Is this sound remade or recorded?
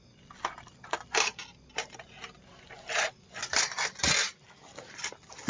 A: recorded